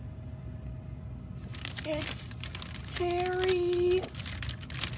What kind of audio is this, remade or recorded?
recorded